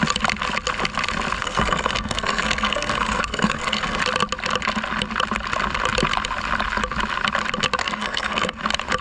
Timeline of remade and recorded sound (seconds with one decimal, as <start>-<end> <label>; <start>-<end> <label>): 0.0-1.4 recorded; 1.4-4.0 remade; 4.0-7.8 recorded; 7.8-8.6 remade; 8.6-9.0 recorded